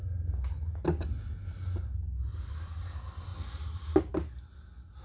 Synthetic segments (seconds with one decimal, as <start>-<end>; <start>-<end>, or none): 2.3-2.8